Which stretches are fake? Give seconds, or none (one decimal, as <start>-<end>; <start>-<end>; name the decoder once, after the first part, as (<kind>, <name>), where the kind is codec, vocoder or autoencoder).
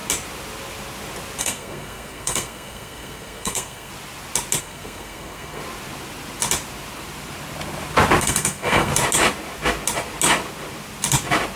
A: 1.4-3.9 (codec, SNAC); 4.6-5.6; 8.2-8.9